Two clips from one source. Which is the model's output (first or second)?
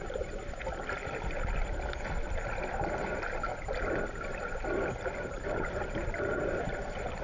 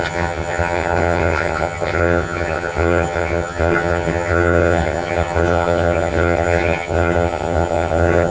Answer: second